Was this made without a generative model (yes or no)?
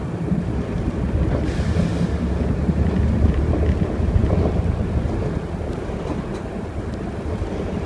yes